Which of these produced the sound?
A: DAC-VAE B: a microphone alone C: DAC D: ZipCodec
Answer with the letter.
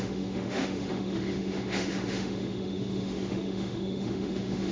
A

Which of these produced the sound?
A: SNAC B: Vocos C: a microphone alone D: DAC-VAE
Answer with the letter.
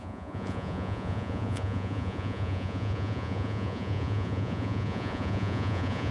B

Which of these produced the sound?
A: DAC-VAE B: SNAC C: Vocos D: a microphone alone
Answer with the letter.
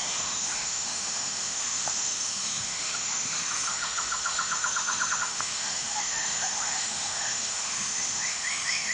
A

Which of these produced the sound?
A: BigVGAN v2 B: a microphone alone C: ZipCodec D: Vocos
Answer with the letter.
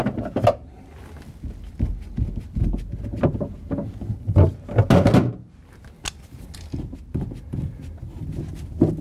B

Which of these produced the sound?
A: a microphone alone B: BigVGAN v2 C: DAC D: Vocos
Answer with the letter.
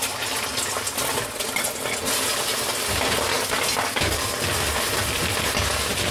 A